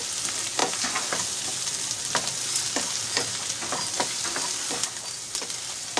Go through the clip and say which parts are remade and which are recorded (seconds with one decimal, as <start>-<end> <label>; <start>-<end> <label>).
0.0-0.6 remade; 0.6-4.2 recorded; 4.2-6.0 remade